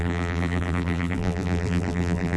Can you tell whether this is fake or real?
fake